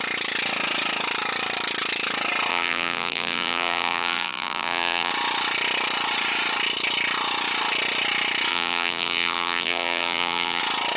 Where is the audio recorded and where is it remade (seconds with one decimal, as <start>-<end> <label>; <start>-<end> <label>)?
0.0-2.5 recorded; 2.5-5.1 remade; 5.1-8.5 recorded; 8.5-10.6 remade; 10.6-11.0 recorded